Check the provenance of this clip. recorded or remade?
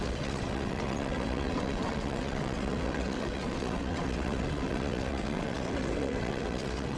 remade